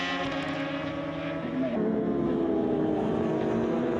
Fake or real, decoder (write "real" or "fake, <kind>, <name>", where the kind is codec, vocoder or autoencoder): real